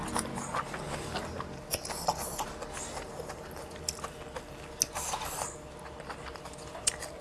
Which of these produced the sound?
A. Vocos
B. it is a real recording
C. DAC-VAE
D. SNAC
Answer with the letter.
B